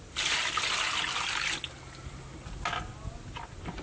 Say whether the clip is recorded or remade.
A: recorded